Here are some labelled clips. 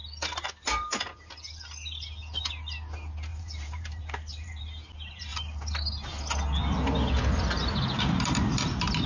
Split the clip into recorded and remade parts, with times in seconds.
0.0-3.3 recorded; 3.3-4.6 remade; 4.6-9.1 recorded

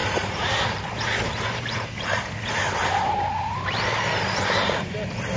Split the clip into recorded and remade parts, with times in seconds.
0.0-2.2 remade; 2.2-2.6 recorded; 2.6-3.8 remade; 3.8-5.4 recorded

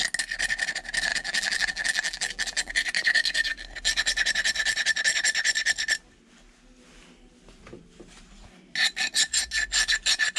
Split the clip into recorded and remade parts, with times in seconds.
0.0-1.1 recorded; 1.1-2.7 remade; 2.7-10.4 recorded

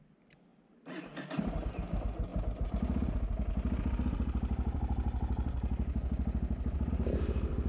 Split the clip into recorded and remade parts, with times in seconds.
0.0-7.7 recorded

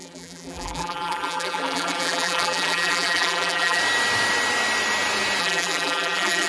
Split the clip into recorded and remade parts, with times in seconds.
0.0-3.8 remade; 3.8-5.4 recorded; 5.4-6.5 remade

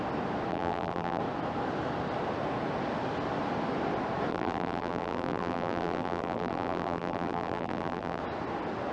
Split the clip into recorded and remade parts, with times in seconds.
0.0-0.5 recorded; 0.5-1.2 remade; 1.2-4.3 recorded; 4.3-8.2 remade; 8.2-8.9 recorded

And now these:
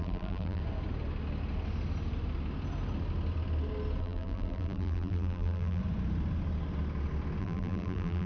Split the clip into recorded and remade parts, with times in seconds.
0.0-0.6 remade; 0.6-4.0 recorded; 4.0-5.8 remade; 5.8-7.4 recorded; 7.4-8.3 remade

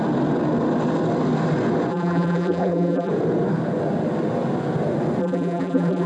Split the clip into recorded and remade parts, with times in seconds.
0.0-1.9 recorded; 1.9-3.1 remade; 3.1-5.2 recorded; 5.2-6.1 remade